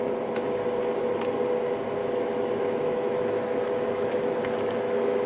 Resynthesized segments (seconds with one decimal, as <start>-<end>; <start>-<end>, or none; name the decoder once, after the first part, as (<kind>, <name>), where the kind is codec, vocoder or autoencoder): 2.0-5.3 (autoencoder, DAC-VAE)